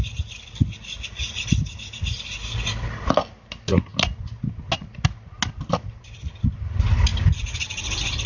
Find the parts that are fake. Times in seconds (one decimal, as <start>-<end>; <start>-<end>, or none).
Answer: none